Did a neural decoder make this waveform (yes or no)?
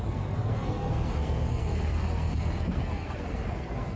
yes